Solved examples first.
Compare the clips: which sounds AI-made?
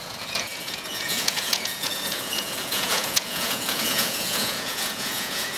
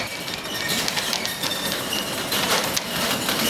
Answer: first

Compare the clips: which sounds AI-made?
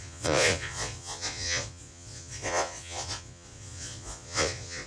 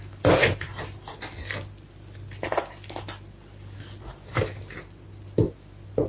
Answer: first